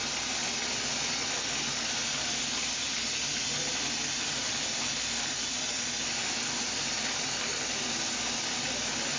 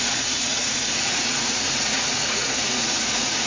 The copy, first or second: second